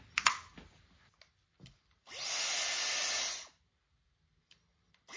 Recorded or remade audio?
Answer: recorded